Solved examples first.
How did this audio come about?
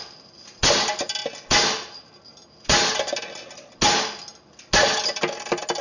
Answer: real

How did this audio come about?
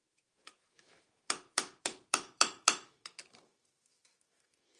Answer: fake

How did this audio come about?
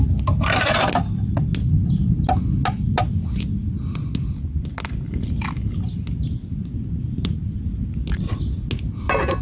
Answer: real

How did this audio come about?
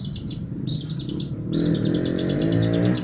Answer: real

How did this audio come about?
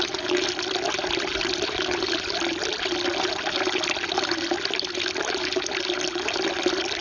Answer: real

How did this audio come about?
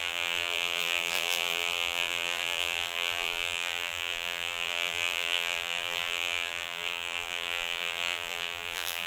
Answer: fake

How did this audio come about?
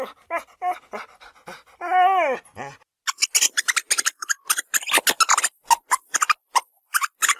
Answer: real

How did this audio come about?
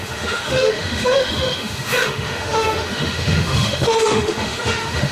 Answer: fake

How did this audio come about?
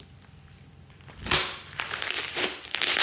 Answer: fake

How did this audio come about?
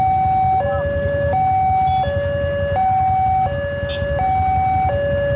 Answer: real